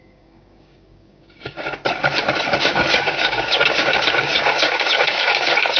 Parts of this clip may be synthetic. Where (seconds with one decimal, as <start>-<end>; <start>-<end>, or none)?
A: 0.0-1.8; 2.6-5.8